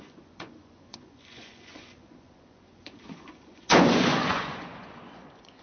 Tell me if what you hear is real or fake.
fake